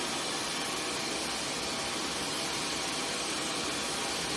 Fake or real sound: real